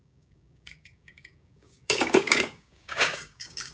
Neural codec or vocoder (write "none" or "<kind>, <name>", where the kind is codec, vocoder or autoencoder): codec, DAC